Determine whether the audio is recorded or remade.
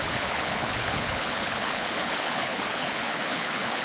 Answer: remade